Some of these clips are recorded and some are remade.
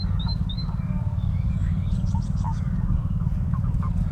remade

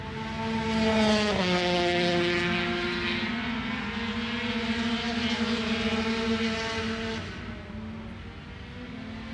recorded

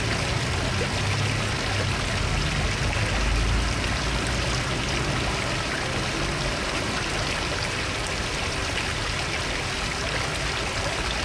recorded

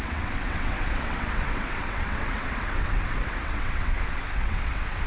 remade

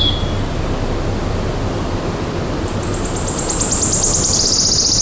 recorded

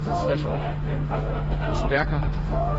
remade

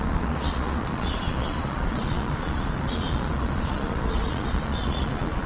remade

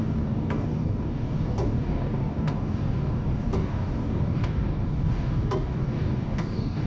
remade